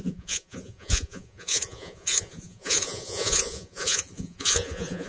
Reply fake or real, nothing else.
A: fake